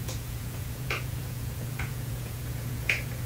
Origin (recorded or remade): remade